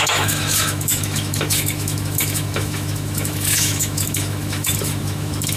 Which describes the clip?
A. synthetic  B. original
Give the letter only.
A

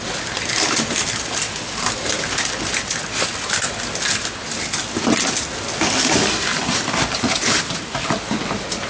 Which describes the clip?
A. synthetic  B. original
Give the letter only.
B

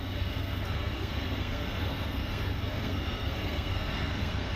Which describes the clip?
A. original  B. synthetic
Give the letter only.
B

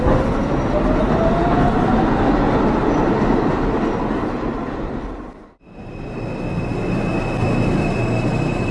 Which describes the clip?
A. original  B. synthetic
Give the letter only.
A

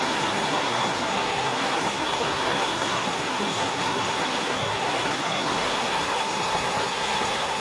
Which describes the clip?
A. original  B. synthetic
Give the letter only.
B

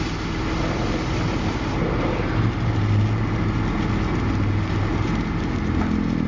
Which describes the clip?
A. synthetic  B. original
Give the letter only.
B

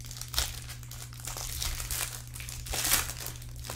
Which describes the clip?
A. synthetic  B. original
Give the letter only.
B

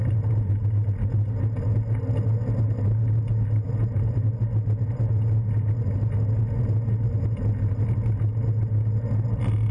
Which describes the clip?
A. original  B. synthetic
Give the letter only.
A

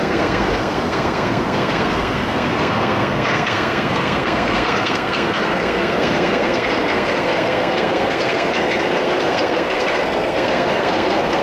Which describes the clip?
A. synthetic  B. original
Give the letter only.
A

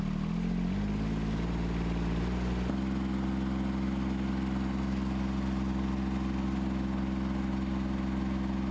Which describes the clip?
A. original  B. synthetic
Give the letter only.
A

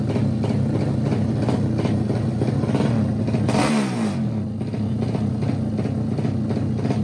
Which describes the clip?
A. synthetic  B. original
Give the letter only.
B